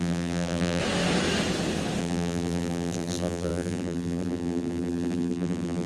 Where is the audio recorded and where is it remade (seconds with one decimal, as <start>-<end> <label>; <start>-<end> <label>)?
0.0-0.8 remade; 0.8-2.0 recorded; 2.0-5.9 remade